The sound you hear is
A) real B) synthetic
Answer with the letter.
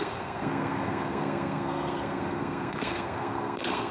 B